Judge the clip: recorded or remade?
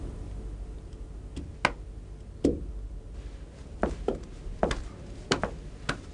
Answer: recorded